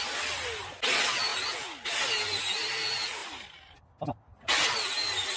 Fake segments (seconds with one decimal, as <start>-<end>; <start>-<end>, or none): none